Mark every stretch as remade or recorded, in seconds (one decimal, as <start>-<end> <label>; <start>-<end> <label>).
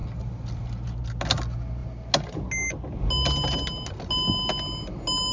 0.0-5.3 recorded